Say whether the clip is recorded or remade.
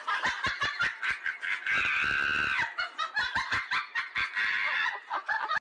recorded